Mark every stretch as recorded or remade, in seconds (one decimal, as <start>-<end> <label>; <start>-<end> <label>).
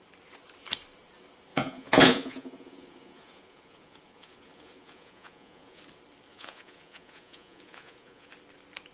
0.0-1.5 recorded; 1.5-5.8 remade; 5.8-6.3 recorded; 6.3-8.3 remade; 8.3-8.9 recorded